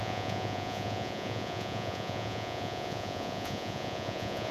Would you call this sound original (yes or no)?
no